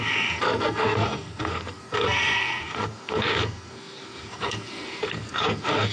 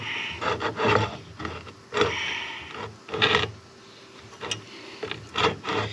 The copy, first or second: first